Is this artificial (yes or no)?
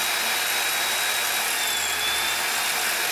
no